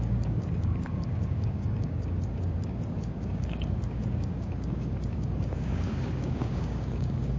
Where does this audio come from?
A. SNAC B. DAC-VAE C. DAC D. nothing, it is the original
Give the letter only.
C